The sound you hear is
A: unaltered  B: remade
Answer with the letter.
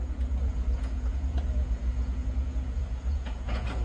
B